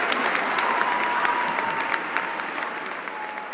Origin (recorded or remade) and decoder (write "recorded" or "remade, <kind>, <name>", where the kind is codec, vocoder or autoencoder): recorded